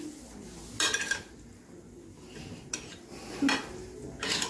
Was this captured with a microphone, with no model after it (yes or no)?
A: yes